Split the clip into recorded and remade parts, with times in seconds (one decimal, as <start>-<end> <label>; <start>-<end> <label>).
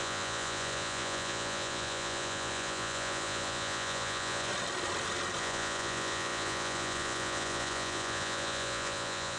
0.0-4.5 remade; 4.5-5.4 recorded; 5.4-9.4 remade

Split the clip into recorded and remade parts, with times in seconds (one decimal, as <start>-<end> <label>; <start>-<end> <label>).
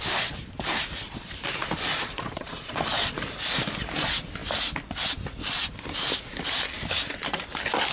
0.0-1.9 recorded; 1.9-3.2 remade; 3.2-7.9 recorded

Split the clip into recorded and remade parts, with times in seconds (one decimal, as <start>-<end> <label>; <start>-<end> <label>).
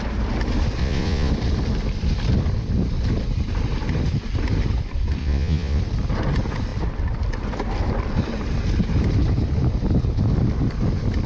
0.0-0.8 recorded; 0.8-1.3 remade; 1.3-5.2 recorded; 5.2-5.8 remade; 5.8-11.3 recorded